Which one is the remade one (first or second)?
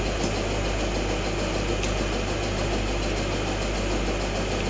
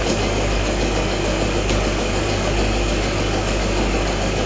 second